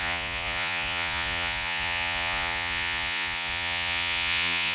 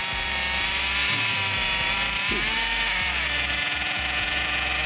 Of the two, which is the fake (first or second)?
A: first